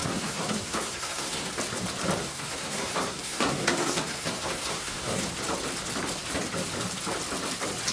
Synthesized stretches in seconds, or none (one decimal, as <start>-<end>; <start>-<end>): 0.0-1.5; 2.2-5.2

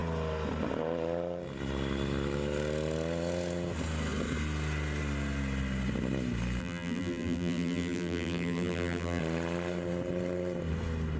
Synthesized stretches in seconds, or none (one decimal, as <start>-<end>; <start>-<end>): 6.6-9.2

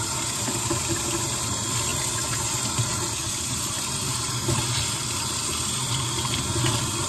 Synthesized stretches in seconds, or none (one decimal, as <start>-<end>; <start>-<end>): none